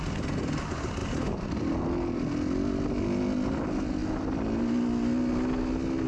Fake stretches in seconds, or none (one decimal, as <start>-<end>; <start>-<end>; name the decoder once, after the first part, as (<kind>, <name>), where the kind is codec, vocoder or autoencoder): none